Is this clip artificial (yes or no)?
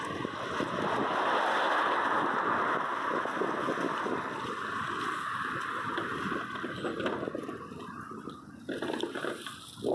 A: no